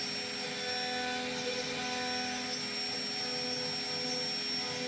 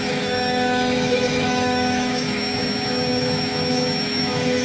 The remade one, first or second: second